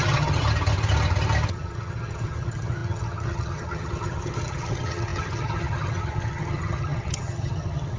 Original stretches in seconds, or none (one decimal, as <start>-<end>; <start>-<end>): 0.4-1.5